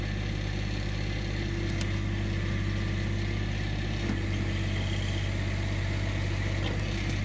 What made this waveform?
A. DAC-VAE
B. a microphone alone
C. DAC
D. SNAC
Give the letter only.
B